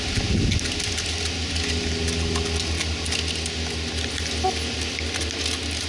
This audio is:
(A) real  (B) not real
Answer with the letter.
A